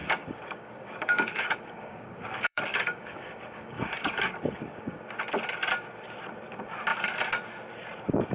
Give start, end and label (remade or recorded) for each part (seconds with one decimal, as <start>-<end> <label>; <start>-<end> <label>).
0.0-5.0 remade; 5.0-8.3 recorded